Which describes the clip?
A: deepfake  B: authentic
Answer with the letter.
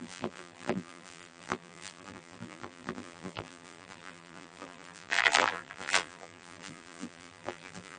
A